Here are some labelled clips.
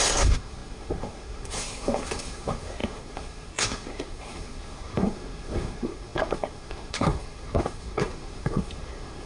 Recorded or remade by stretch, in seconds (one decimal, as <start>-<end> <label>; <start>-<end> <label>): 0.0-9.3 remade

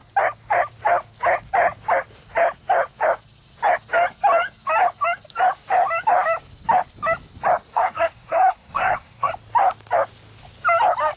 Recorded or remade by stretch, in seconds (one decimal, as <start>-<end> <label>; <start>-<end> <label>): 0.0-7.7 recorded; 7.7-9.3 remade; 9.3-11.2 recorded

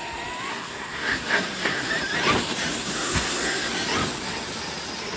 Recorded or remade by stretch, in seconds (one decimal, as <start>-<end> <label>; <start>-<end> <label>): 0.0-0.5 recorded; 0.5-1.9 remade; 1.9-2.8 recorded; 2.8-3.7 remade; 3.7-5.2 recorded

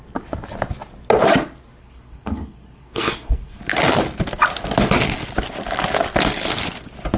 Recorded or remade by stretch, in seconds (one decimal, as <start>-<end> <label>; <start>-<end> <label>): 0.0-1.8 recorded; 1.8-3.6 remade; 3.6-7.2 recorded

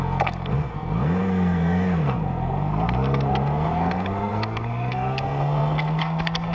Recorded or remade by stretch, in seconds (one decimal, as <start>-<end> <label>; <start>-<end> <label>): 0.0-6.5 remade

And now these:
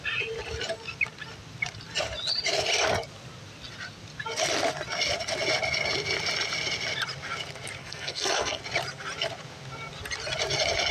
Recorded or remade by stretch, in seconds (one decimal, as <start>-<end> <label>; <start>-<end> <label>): 0.0-7.8 recorded; 7.8-8.6 remade; 8.6-10.9 recorded

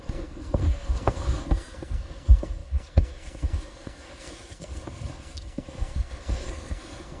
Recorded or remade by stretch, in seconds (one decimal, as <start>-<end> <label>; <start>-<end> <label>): 0.0-7.2 remade

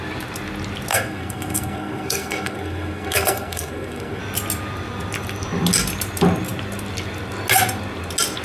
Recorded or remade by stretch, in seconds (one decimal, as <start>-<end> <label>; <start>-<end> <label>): 0.0-0.9 recorded; 0.9-4.2 remade; 4.2-8.4 recorded